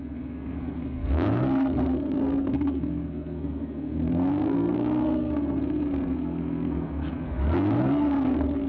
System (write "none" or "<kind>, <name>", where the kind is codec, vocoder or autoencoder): codec, SNAC